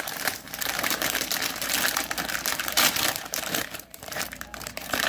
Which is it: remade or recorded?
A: remade